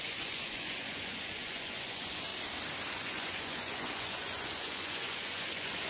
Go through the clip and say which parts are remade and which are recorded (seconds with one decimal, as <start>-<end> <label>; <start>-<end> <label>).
0.0-2.3 remade; 2.3-2.9 recorded; 2.9-5.9 remade